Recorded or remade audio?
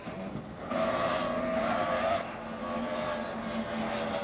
recorded